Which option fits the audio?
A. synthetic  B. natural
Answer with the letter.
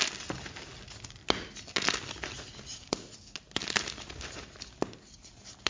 B